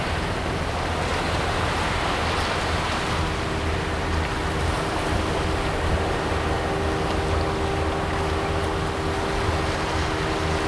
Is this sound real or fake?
real